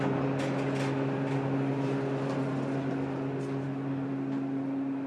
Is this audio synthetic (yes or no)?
no